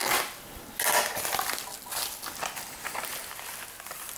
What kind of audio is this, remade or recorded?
recorded